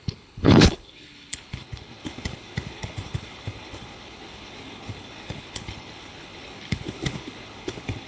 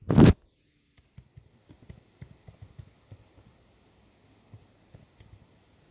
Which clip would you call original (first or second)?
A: second